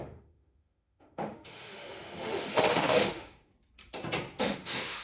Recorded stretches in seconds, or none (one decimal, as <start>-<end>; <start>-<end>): 3.5-4.4